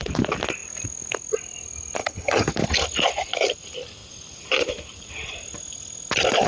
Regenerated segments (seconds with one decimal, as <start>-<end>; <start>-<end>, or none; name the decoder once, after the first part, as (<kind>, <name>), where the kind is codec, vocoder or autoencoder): 2.0-2.5 (vocoder, HiFi-GAN)